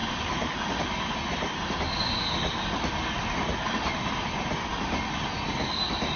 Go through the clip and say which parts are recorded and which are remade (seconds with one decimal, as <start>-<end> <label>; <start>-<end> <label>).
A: 0.0-6.2 recorded